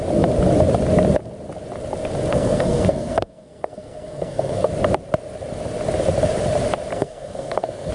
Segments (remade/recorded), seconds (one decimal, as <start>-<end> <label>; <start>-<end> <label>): 0.0-2.3 recorded; 2.3-4.7 remade; 4.7-6.9 recorded; 6.9-7.9 remade